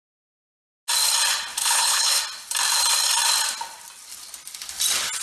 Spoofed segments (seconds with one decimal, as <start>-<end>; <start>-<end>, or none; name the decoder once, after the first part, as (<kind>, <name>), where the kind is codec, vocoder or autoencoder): 1.6-2.2 (codec, HILCodec)